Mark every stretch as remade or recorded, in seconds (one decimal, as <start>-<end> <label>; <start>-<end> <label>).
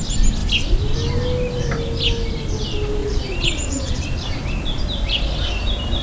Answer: 0.0-3.0 recorded; 3.0-4.0 remade; 4.0-6.0 recorded